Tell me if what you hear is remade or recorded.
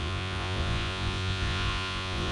remade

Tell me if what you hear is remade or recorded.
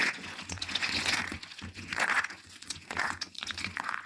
remade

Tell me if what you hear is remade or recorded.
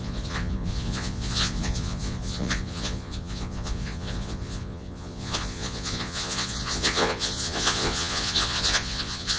remade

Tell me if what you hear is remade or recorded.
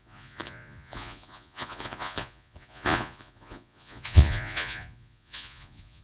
remade